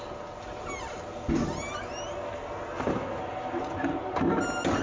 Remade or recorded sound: recorded